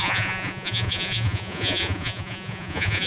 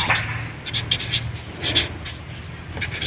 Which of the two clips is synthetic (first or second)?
first